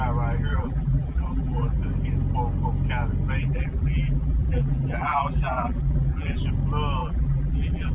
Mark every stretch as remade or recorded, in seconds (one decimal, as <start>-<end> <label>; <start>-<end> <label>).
0.0-0.5 recorded; 0.5-1.8 remade; 1.8-3.4 recorded; 3.4-6.4 remade; 6.4-7.0 recorded; 7.0-7.9 remade